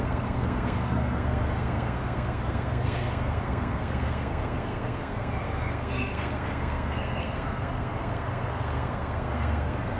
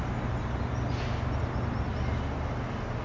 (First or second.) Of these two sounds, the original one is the second